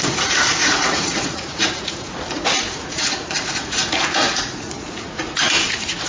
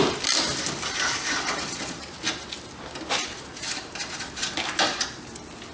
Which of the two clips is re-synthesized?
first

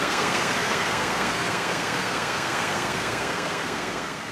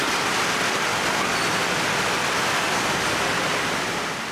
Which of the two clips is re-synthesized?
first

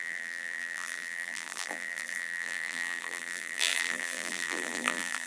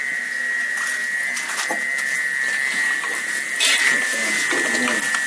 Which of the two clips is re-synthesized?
first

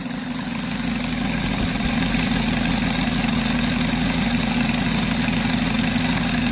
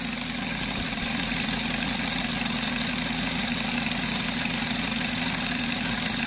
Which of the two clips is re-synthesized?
second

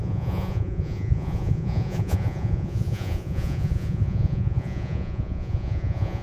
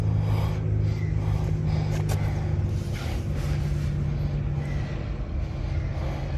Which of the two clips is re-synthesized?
first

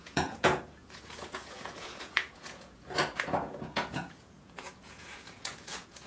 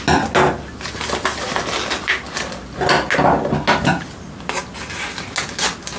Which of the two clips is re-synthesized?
first